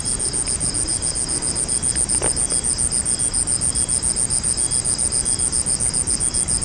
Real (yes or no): yes